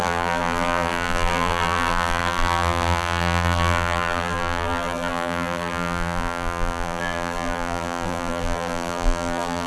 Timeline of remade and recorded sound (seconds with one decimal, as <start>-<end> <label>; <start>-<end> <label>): 0.0-9.7 remade